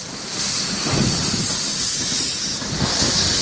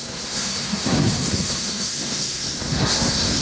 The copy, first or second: second